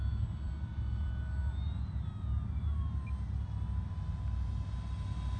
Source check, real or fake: real